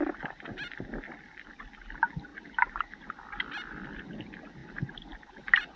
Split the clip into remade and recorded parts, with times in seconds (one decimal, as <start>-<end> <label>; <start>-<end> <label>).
0.0-5.8 recorded